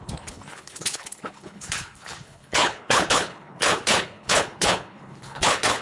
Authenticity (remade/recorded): remade